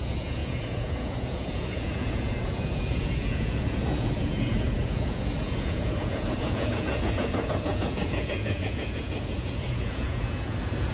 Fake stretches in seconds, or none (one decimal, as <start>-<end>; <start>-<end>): 0.0-10.9